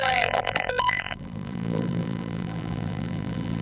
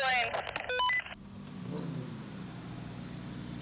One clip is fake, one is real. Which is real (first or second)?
second